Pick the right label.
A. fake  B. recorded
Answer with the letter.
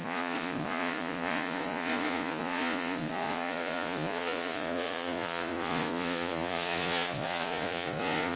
A